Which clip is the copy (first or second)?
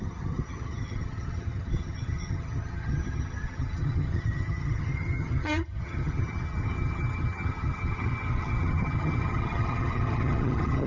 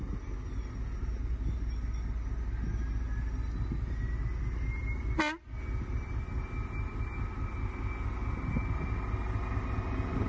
first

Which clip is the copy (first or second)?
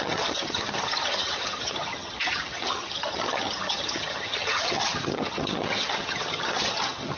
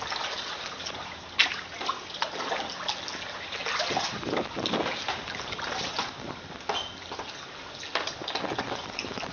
first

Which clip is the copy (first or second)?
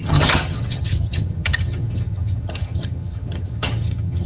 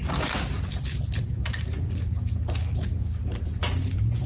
first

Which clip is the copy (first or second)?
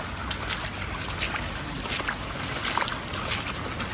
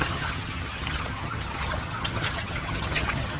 second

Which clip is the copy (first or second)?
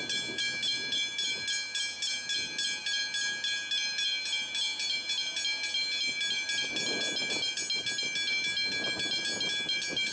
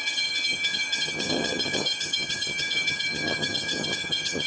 second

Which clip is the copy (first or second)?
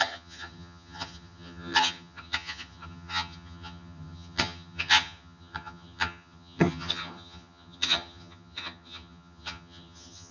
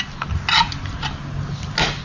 first